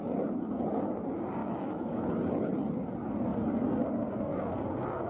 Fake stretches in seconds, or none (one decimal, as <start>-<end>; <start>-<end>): 1.4-2.1